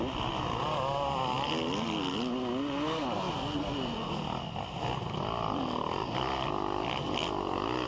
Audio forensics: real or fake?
real